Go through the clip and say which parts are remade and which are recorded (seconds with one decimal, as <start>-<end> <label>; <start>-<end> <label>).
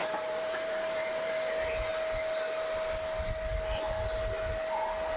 0.0-1.3 remade; 1.3-5.2 recorded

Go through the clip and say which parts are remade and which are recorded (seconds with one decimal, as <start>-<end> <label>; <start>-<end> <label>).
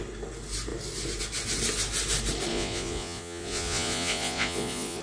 0.0-2.5 recorded; 2.5-5.0 remade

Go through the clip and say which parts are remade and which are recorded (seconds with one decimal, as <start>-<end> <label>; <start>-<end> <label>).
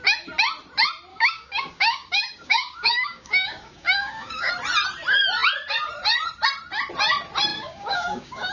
0.0-1.1 recorded; 1.1-4.5 remade; 4.5-7.5 recorded; 7.5-8.5 remade